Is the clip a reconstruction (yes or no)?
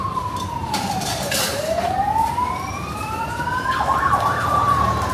yes